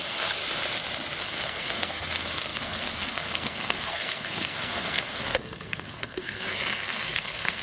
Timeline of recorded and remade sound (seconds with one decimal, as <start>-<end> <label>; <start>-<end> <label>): 0.0-0.4 remade; 0.4-1.2 recorded; 1.2-7.6 remade